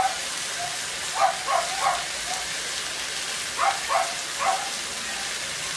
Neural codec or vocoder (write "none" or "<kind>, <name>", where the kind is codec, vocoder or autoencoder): none